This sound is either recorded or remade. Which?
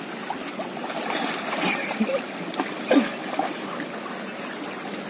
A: recorded